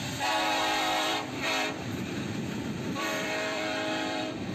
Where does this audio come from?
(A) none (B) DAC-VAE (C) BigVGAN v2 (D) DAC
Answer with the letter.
C